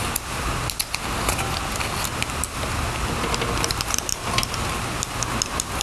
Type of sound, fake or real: real